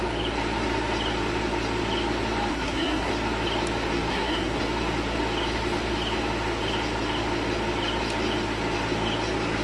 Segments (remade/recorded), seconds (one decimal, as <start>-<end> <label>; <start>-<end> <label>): 0.0-2.5 recorded; 2.5-3.1 remade; 3.1-4.1 recorded; 4.1-4.6 remade; 4.6-9.6 recorded